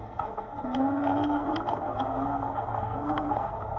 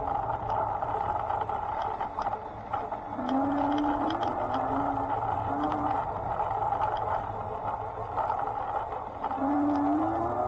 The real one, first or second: second